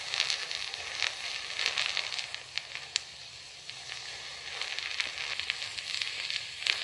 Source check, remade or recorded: recorded